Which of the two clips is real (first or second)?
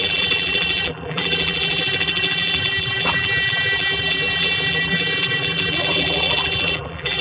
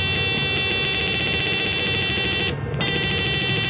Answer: second